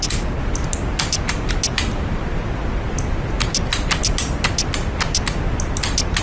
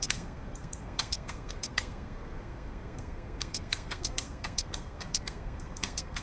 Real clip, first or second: first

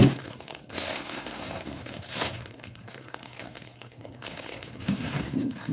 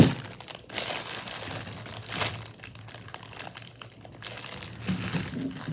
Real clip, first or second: second